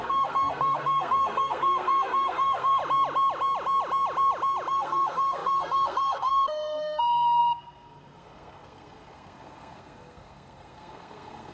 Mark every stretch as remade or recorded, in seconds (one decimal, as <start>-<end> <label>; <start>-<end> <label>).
0.0-2.8 remade; 2.8-4.7 recorded; 4.7-11.5 remade